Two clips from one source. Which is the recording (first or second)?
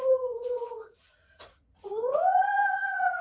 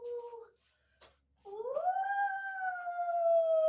second